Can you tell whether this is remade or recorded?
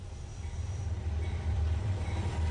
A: remade